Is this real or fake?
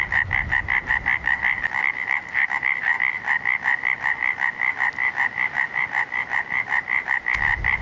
real